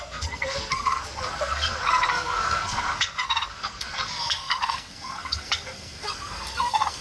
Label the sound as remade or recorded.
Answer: remade